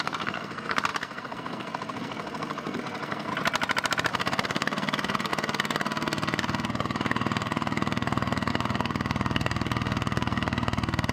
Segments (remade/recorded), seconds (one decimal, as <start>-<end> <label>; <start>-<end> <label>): 0.0-3.3 remade; 3.3-4.1 recorded; 4.1-11.1 remade